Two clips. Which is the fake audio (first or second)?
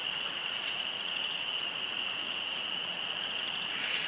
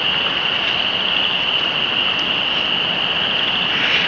first